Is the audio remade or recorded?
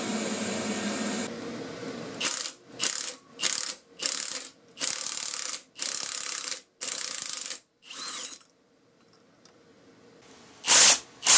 recorded